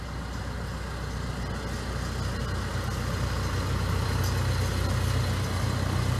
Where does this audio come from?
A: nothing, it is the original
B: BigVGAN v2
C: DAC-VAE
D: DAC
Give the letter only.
A